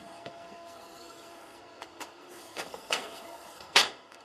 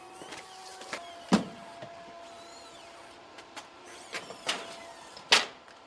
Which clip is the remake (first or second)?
first